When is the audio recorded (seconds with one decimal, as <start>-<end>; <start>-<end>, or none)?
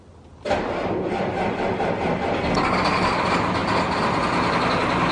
0.0-5.1